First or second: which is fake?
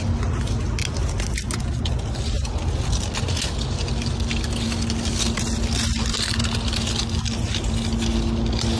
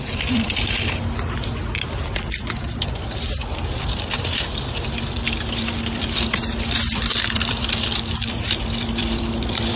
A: second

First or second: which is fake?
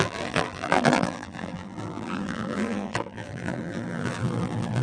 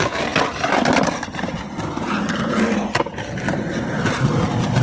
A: first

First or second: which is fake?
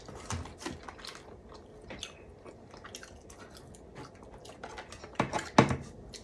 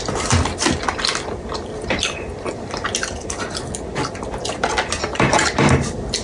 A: second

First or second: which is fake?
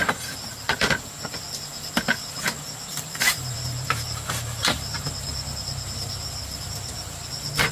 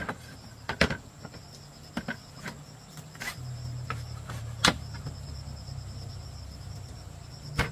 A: first